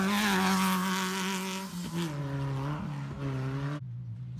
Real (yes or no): yes